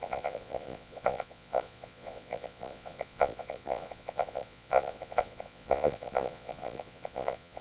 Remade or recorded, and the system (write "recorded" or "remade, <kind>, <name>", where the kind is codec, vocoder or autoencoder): remade, vocoder, Vocos